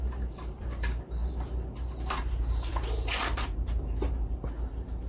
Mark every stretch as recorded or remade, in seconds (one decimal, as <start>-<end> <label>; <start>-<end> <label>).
0.0-1.2 remade; 1.2-2.1 recorded; 2.1-2.7 remade; 2.7-3.4 recorded; 3.4-5.1 remade